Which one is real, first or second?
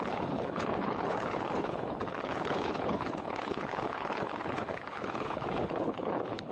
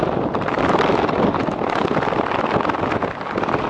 second